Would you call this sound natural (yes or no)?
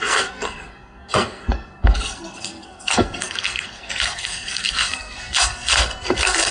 no